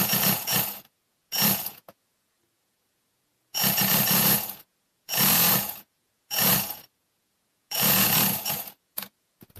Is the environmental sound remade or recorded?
remade